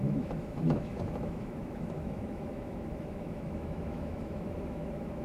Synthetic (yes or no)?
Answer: yes